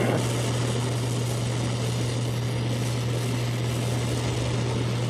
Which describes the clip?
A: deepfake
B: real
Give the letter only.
B